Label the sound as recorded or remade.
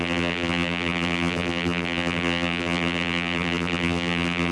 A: remade